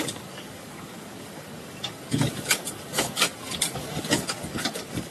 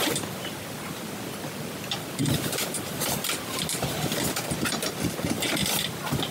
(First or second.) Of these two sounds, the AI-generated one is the first